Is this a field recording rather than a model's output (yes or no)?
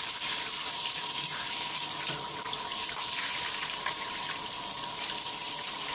yes